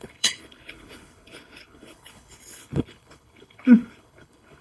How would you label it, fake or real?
fake